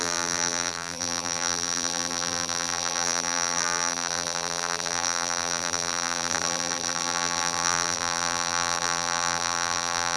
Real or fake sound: fake